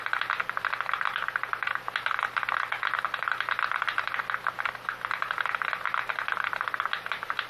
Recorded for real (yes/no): yes